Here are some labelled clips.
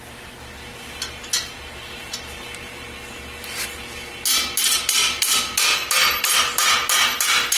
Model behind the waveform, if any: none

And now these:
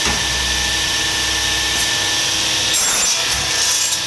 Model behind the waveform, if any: none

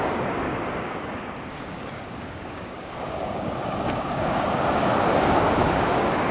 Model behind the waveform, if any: codec, DAC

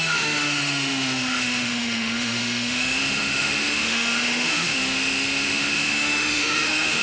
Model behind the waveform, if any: autoencoder, DAC-VAE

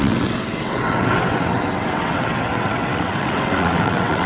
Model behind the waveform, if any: vocoder, WaveNeXt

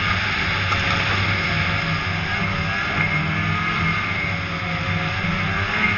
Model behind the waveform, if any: none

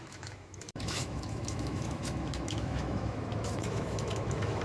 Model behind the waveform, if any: autoencoder, DAC-VAE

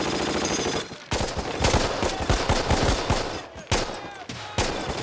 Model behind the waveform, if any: none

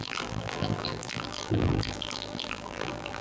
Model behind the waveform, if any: vocoder, BigVGAN v2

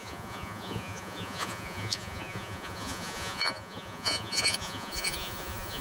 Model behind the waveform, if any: vocoder, Vocos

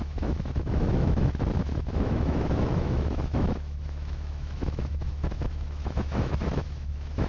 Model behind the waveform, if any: autoencoder, DAC-VAE